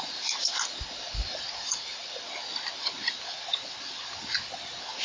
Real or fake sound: real